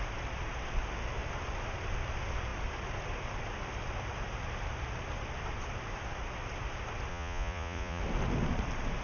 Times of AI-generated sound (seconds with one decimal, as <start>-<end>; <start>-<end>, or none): 7.1-8.0